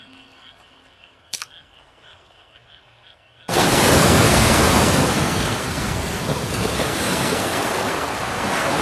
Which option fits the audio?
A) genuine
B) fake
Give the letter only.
B